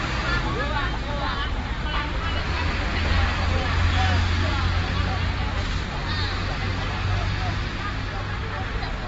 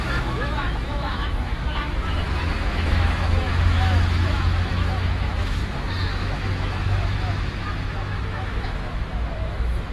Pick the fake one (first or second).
second